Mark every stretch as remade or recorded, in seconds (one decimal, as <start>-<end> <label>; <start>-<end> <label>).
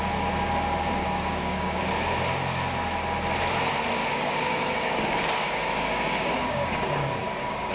0.0-1.0 recorded; 1.0-1.8 remade; 1.8-4.0 recorded; 4.0-7.7 remade